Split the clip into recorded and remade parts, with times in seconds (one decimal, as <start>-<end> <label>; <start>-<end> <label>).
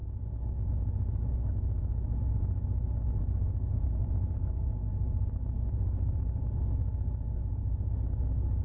0.0-3.7 recorded; 3.7-6.6 remade; 6.6-8.6 recorded